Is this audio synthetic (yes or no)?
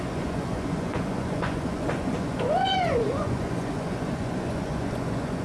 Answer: yes